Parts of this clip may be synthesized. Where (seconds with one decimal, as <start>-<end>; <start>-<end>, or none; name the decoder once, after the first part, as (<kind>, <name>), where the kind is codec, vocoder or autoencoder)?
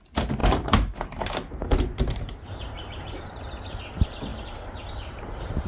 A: 0.4-3.8 (vocoder, BigVGAN v2)